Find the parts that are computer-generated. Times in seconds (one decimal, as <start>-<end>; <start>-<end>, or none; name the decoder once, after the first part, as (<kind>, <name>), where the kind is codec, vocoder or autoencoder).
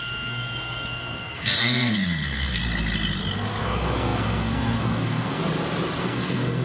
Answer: 0.0-2.6 (codec, SNAC); 3.6-5.4; 6.0-6.6